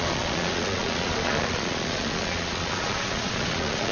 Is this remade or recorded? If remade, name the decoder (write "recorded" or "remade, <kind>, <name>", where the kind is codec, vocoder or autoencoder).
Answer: remade, vocoder, Vocos